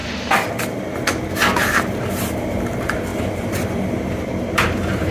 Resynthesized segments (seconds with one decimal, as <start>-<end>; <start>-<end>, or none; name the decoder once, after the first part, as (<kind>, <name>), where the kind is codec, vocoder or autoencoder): 1.9-5.1 (vocoder, BigVGAN v2)